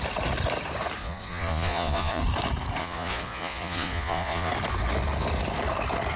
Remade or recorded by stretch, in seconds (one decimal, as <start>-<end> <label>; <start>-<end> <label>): 0.0-1.0 recorded; 1.0-2.2 remade; 2.2-2.8 recorded; 2.8-4.5 remade; 4.5-6.2 recorded